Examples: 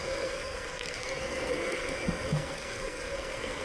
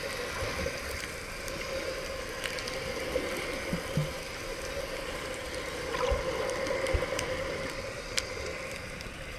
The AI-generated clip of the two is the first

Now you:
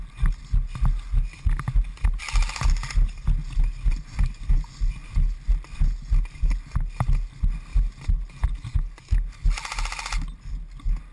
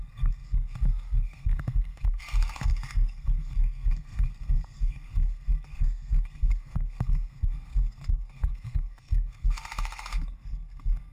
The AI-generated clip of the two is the second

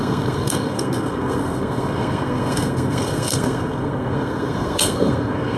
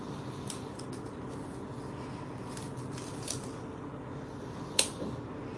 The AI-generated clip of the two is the first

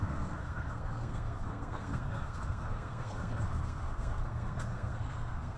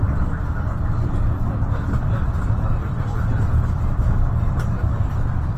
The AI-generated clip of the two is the first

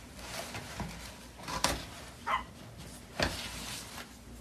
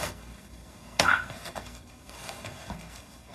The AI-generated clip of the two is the second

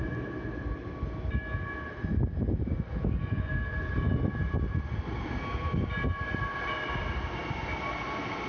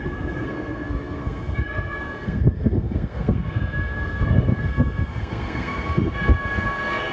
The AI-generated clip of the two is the second